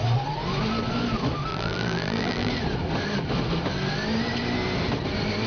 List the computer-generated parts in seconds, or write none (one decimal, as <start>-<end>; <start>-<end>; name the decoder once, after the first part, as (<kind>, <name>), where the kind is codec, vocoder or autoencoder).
1.5-2.5 (vocoder, BigVGAN v2)